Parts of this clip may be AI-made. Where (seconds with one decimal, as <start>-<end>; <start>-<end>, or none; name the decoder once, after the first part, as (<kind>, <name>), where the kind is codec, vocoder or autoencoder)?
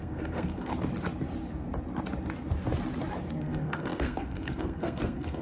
0.0-0.7 (codec, SNAC); 3.4-5.4